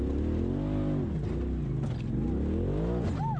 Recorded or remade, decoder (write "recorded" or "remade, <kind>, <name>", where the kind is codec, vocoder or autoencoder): recorded